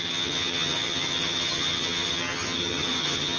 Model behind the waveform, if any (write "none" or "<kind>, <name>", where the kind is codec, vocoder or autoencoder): vocoder, HiFi-GAN